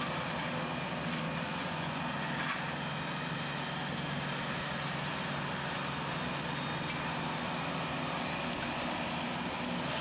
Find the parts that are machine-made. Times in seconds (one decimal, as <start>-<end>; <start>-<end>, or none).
1.5-2.0